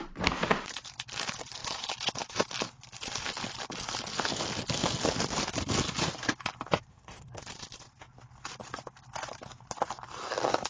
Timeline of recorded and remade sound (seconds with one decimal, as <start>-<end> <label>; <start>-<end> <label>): 0.0-6.9 recorded; 6.9-7.4 remade; 7.4-10.7 recorded